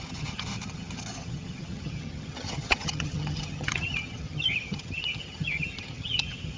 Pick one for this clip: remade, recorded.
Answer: remade